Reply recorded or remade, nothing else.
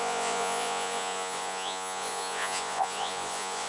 remade